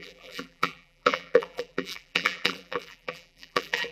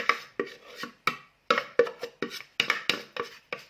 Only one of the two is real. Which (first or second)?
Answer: second